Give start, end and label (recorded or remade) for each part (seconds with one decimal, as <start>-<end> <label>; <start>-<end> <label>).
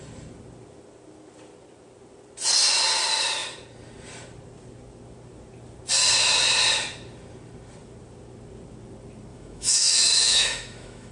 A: 0.0-9.3 recorded; 9.3-11.1 remade